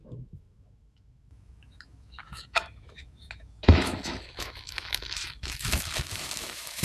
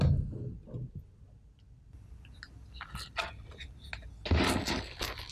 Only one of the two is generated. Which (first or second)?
first